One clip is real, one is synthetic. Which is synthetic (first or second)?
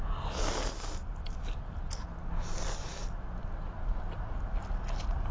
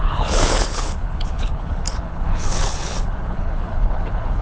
second